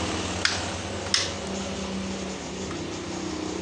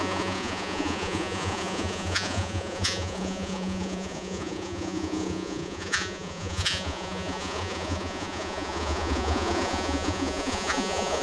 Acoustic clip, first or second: first